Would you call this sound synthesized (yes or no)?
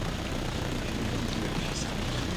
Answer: no